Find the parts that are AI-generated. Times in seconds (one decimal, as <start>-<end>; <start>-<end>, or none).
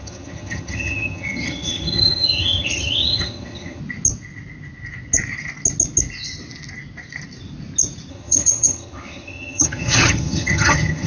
0.0-3.8; 8.1-11.1